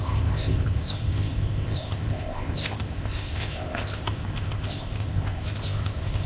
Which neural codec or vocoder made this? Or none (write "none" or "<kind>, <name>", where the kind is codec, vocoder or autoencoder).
codec, ZipCodec